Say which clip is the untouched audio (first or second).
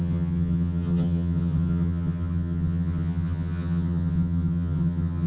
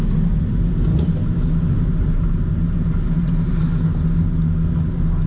second